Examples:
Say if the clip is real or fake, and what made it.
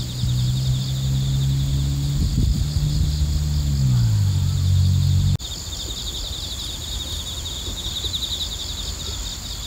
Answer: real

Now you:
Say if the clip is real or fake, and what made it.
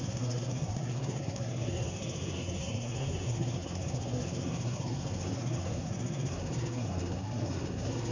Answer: fake, codec, SNAC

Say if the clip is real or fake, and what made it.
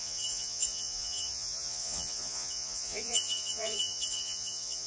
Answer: fake, vocoder, Vocos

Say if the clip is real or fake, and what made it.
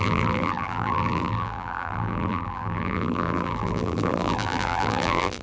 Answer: fake, vocoder, BigVGAN v2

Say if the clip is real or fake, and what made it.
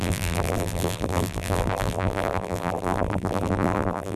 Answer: fake, vocoder, BigVGAN v2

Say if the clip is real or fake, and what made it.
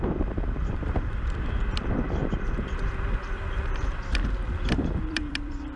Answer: fake, vocoder, BigVGAN v2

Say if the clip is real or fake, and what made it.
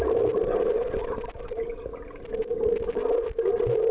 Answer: real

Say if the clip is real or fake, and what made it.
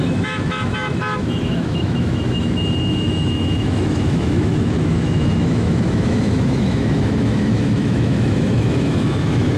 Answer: fake, autoencoder, DAC-VAE